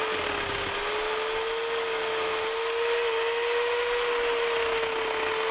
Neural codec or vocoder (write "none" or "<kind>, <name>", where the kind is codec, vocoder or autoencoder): none